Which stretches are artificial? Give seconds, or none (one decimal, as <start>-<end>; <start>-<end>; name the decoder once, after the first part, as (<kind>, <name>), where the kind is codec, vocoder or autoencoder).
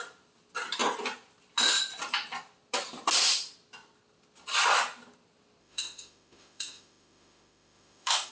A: 5.6-8.3 (autoencoder, DAC-VAE)